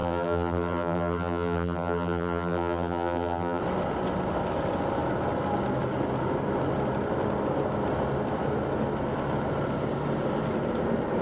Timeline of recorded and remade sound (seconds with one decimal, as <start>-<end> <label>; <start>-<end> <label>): 0.0-3.6 remade; 3.6-11.2 recorded